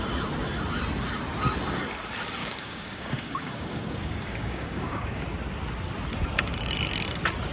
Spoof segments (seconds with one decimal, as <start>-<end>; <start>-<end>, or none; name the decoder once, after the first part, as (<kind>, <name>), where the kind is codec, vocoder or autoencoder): 2.4-5.2 (codec, DAC)